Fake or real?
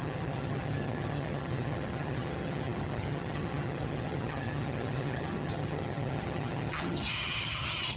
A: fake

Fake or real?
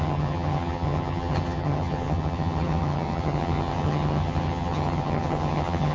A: fake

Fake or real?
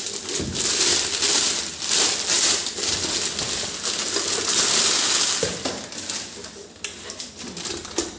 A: real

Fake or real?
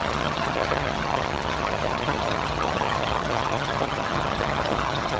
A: fake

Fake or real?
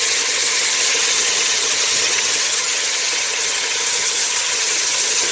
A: fake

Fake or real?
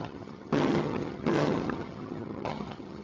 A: fake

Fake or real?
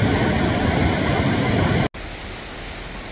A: real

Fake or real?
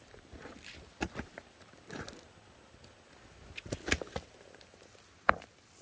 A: real